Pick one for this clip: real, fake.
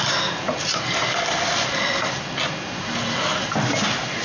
real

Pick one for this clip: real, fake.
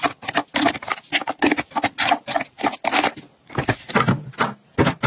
real